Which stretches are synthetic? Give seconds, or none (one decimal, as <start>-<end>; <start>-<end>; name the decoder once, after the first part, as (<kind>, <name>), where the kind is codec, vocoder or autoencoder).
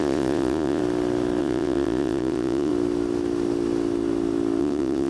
0.0-0.8 (vocoder, Vocos); 1.4-2.7; 4.6-5.1